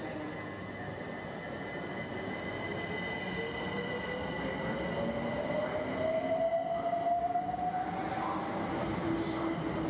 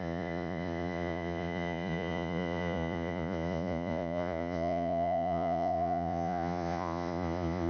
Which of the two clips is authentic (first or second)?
first